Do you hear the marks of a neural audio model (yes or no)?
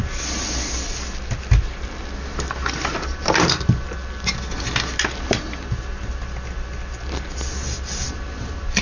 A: no